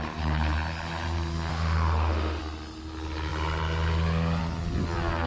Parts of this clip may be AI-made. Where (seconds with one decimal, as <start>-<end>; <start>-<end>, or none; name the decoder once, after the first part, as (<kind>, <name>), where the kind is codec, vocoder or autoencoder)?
1.5-2.4 (autoencoder, DAC-VAE)